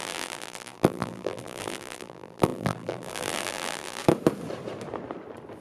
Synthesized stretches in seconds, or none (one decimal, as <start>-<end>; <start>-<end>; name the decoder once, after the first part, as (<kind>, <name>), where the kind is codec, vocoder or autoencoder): 0.0-4.0 (vocoder, BigVGAN v2)